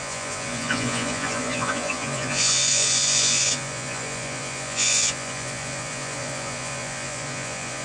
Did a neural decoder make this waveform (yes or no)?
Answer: yes